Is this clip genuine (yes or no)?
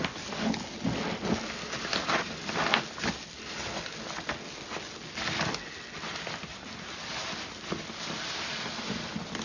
yes